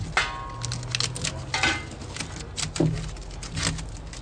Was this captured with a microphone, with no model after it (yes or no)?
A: yes